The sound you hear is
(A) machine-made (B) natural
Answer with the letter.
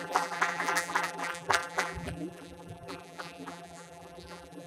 A